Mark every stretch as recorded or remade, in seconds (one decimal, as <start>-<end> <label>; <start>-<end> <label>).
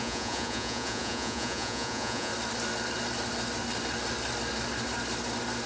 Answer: 0.0-2.3 remade; 2.3-5.7 recorded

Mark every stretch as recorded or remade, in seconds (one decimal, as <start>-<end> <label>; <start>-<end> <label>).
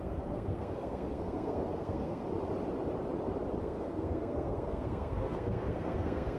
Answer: 0.0-2.2 remade; 2.2-3.6 recorded; 3.6-6.4 remade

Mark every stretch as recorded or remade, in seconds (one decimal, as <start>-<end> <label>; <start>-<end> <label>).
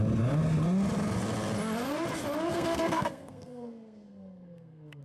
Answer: 0.0-2.5 recorded; 2.5-5.0 remade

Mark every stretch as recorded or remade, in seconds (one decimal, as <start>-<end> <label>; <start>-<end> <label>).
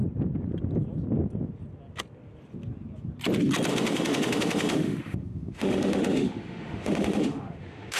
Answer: 0.0-3.7 recorded; 3.7-8.0 remade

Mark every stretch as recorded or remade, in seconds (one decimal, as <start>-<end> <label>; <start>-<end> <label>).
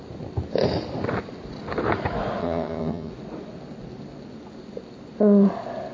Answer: 0.0-2.4 recorded; 2.4-3.1 remade; 3.1-5.9 recorded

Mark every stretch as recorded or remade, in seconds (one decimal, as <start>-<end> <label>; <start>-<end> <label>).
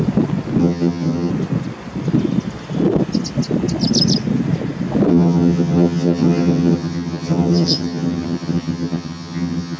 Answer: 0.0-0.6 recorded; 0.6-1.3 remade; 1.3-5.1 recorded; 5.1-9.8 remade